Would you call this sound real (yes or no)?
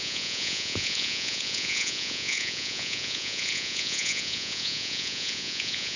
no